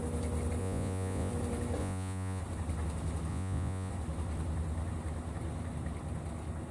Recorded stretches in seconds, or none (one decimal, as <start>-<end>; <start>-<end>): 0.0-0.6; 1.3-1.8; 2.4-3.3; 3.9-6.7